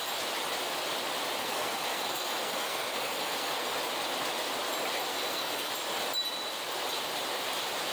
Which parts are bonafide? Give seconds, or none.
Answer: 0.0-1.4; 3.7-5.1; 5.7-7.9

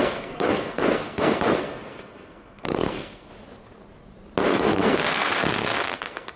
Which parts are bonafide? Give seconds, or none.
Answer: 3.3-4.4

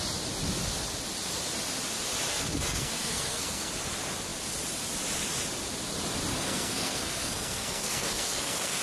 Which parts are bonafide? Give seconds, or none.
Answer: 0.0-2.3; 3.7-6.3

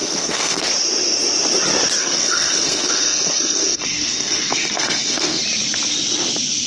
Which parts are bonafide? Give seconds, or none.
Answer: 0.7-2.0; 5.4-6.7

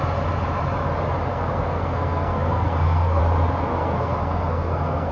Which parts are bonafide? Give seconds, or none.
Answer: 0.0-1.3; 3.2-3.7